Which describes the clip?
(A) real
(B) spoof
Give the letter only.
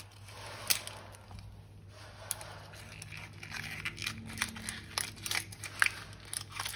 A